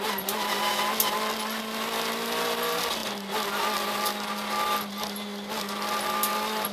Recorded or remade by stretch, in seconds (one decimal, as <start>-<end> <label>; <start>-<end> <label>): 0.0-6.7 recorded